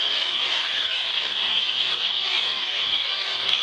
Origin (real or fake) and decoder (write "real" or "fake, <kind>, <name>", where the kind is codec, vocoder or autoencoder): fake, codec, DAC